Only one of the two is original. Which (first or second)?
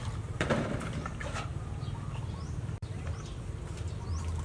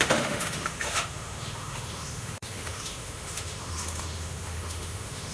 first